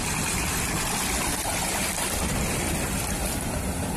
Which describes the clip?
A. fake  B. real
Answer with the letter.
A